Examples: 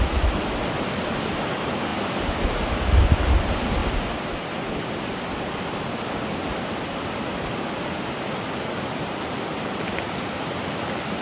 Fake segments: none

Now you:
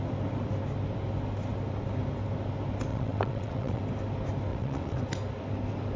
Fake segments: 2.9-3.8; 4.5-5.0

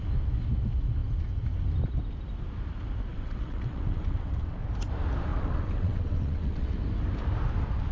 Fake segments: 3.1-4.5; 5.3-6.7

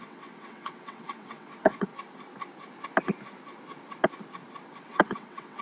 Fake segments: 0.0-1.9; 4.8-5.6